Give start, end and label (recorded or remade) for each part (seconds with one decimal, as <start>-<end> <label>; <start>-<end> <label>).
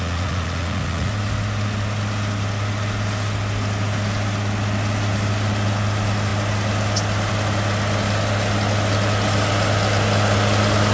0.0-1.1 remade; 1.1-10.9 recorded